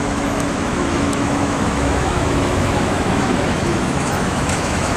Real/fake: fake